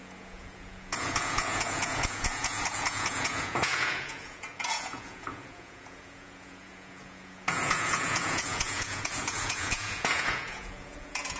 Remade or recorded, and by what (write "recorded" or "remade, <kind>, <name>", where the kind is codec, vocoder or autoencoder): remade, vocoder, Vocos